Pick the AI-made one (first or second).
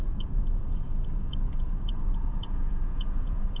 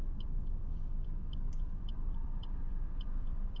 first